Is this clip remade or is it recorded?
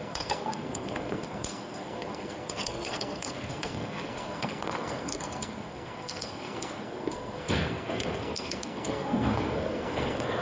remade